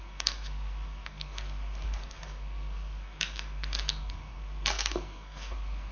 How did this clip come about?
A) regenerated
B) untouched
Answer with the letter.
A